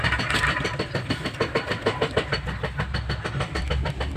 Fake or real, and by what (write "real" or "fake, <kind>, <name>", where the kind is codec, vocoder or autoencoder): real